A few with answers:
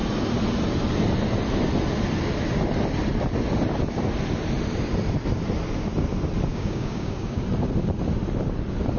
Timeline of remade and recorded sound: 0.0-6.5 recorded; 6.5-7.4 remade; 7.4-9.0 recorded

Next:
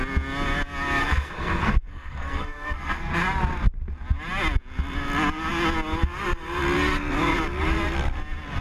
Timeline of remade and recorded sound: 0.0-1.0 recorded; 1.0-3.1 remade; 3.1-8.6 recorded

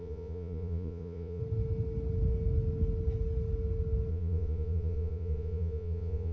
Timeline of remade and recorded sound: 0.0-1.4 remade; 1.4-4.1 recorded; 4.1-6.3 remade

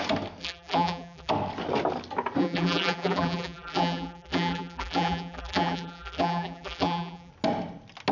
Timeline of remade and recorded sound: 0.0-0.4 recorded; 0.4-1.3 remade; 1.3-2.4 recorded; 2.4-7.3 remade; 7.3-8.1 recorded